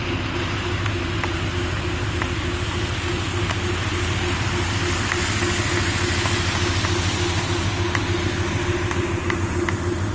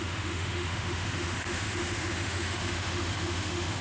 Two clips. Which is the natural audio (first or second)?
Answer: first